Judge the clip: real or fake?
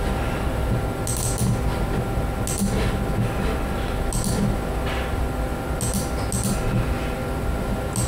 real